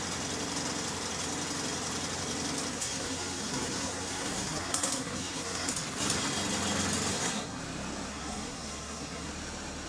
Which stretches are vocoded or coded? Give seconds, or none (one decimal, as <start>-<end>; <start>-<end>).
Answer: 2.7-5.7; 7.1-7.6; 8.1-9.3